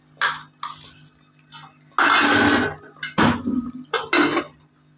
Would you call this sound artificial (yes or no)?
no